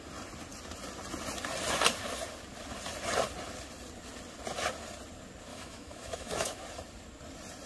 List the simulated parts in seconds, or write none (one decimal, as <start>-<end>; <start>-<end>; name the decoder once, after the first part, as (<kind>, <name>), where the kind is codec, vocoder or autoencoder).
5.5-6.6 (autoencoder, DAC-VAE)